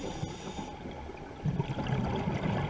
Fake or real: real